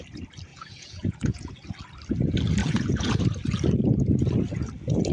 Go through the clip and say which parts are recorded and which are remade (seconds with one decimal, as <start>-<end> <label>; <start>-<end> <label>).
0.0-0.5 recorded; 0.5-1.5 remade; 1.5-2.6 recorded; 2.6-3.2 remade; 3.2-5.1 recorded